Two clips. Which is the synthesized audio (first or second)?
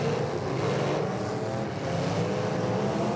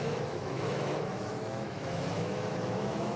second